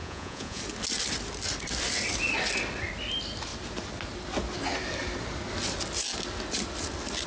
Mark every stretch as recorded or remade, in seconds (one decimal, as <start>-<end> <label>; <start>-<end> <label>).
0.0-0.6 remade; 0.6-7.3 recorded